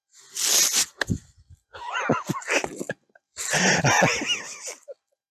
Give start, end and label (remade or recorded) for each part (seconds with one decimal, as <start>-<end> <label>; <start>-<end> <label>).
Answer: 0.0-5.3 recorded